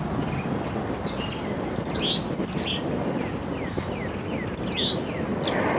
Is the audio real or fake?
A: real